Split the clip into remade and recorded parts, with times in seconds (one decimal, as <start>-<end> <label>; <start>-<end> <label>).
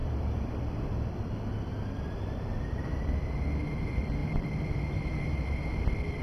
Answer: 0.0-0.5 remade; 0.5-4.2 recorded; 4.2-5.8 remade; 5.8-6.2 recorded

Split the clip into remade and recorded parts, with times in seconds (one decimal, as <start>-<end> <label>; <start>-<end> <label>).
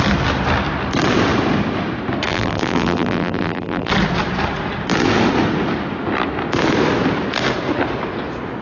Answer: 0.0-2.3 recorded; 2.3-3.9 remade; 3.9-8.6 recorded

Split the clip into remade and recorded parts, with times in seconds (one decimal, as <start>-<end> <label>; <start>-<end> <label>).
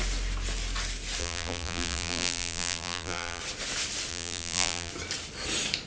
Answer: 0.0-1.2 recorded; 1.2-3.4 remade; 3.4-4.1 recorded; 4.1-4.9 remade; 4.9-5.9 recorded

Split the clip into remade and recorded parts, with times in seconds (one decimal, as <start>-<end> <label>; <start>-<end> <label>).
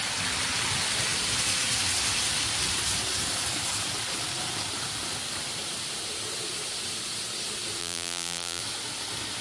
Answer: 0.0-7.8 recorded; 7.8-8.6 remade; 8.6-9.4 recorded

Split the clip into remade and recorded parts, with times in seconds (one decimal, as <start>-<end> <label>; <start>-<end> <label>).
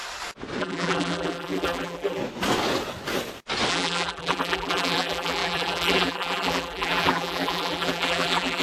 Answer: 0.0-0.6 recorded; 0.6-2.2 remade; 2.2-3.7 recorded; 3.7-8.6 remade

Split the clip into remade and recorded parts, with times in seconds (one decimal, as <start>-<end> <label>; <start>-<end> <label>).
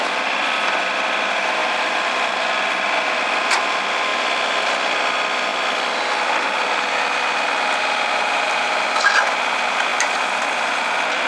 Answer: 0.0-1.6 recorded; 1.6-2.3 remade; 2.3-11.3 recorded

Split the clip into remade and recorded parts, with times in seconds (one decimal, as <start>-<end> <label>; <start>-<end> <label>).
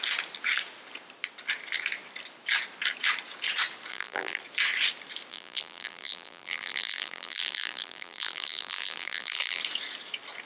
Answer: 0.0-3.9 recorded; 3.9-4.4 remade; 4.4-5.3 recorded; 5.3-9.6 remade; 9.6-10.5 recorded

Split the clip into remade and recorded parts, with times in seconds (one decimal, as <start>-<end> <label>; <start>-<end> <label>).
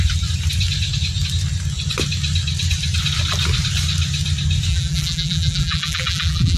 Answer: 0.0-4.7 recorded; 4.7-6.6 remade